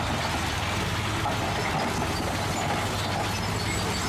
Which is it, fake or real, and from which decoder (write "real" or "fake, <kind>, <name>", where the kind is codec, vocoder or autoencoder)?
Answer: real